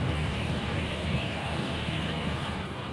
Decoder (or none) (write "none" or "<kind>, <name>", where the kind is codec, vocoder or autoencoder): codec, DAC